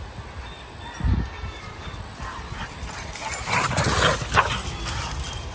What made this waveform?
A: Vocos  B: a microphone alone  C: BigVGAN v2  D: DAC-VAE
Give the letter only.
B